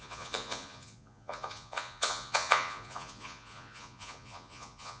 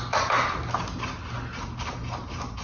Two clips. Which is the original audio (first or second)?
second